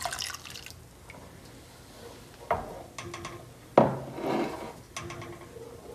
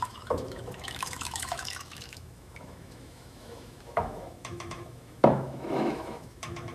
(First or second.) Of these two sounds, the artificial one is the second